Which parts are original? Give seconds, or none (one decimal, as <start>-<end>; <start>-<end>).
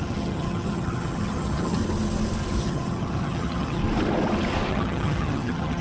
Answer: 1.8-2.6; 3.8-4.7